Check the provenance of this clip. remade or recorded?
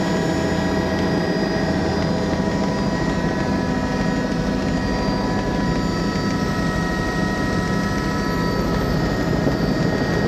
recorded